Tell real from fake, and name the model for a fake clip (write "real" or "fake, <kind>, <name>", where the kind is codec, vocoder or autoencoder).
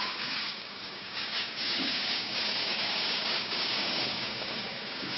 fake, codec, DAC